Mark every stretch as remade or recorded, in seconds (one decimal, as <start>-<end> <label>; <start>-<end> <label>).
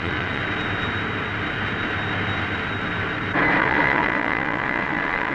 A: 0.0-0.4 remade; 0.4-3.6 recorded; 3.6-5.3 remade